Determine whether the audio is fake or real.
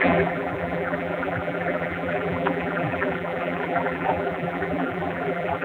fake